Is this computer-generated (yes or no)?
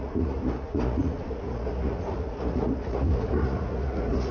yes